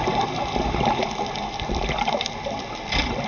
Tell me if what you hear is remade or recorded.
recorded